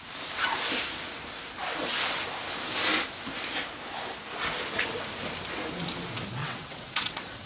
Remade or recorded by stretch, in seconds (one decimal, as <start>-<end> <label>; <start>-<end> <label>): 0.0-6.4 recorded; 6.4-7.5 remade